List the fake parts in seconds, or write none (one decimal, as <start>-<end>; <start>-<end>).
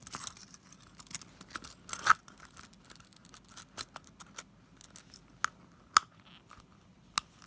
none